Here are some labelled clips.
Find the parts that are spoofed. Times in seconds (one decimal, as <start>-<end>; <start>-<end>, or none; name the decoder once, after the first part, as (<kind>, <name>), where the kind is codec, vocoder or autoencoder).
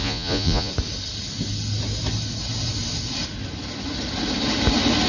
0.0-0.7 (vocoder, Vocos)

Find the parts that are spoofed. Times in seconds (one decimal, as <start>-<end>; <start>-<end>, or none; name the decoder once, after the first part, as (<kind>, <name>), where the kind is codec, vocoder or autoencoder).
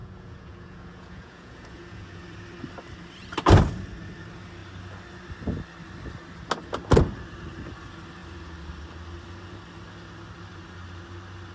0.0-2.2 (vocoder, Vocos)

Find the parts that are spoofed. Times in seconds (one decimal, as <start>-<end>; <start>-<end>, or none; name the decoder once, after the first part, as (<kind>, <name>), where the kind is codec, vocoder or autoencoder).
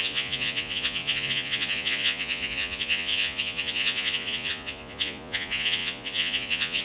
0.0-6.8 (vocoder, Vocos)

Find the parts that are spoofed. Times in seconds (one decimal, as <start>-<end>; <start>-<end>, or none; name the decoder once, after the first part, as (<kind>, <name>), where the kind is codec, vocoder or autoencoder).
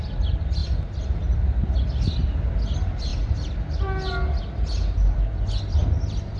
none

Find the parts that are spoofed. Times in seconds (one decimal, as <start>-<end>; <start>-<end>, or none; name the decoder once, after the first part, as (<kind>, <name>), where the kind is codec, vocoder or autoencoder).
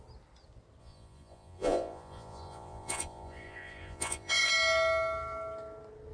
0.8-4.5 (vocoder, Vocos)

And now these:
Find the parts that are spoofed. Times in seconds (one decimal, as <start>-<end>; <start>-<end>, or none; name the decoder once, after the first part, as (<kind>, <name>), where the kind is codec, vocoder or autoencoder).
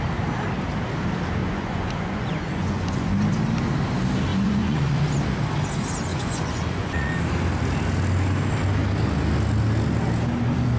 1.4-3.1 (vocoder, Vocos); 4.3-5.0; 6.1-7.1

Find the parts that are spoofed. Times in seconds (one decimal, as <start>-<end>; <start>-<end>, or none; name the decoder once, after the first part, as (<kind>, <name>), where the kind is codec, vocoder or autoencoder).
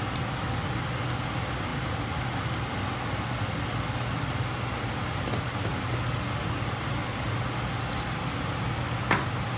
none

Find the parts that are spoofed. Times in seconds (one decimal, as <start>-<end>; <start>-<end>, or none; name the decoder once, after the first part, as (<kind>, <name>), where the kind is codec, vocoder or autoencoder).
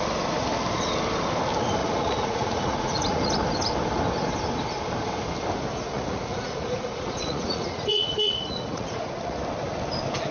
1.8-3.3 (vocoder, Vocos); 5.7-9.4